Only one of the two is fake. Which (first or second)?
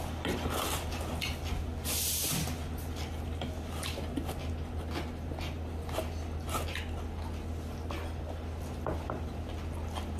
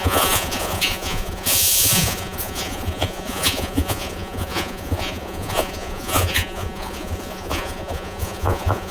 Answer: second